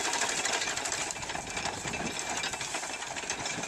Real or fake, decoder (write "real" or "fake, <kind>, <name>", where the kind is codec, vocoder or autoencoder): real